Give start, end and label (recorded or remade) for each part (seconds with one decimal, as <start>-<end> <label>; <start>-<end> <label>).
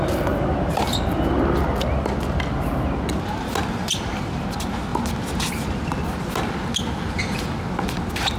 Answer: 0.0-8.4 recorded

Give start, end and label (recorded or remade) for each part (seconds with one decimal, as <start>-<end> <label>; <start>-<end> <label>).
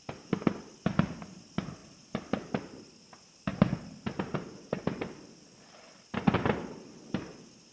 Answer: 0.0-7.7 recorded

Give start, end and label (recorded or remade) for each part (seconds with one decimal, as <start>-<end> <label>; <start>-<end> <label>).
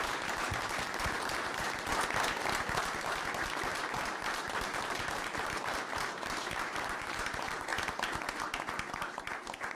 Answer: 0.0-1.9 remade; 1.9-2.8 recorded; 2.8-7.7 remade; 7.7-8.9 recorded; 8.9-9.8 remade